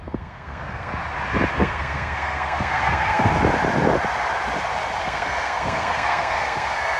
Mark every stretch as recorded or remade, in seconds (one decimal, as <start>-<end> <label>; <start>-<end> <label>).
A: 0.0-0.9 remade; 0.9-1.5 recorded; 1.5-3.3 remade; 3.3-5.0 recorded; 5.0-7.0 remade